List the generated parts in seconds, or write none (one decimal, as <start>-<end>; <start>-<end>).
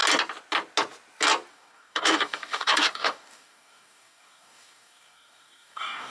1.5-6.1